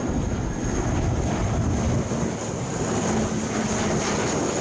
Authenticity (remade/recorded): recorded